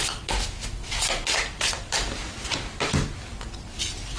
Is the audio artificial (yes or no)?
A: no